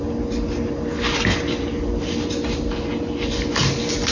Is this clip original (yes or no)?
yes